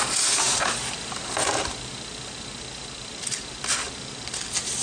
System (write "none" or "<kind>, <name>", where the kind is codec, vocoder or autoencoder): none